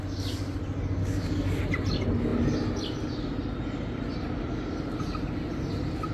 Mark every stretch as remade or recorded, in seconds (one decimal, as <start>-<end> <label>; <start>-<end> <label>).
0.0-1.0 recorded; 1.0-1.6 remade; 1.6-6.1 recorded